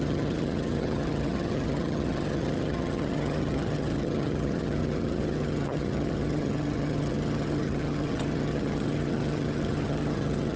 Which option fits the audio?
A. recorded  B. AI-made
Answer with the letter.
B